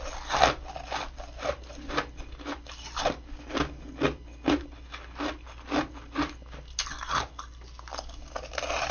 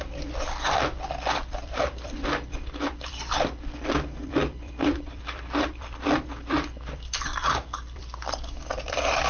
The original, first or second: first